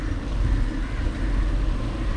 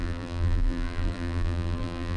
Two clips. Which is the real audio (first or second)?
first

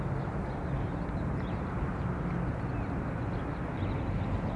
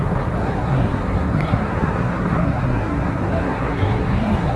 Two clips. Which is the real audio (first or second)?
first